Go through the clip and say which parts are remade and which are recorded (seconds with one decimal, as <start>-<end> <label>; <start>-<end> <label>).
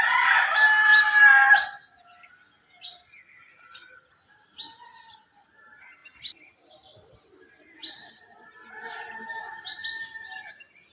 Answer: 0.0-10.9 recorded